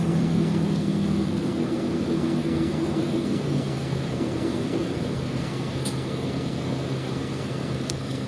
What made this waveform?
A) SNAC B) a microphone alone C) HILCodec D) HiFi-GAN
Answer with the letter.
A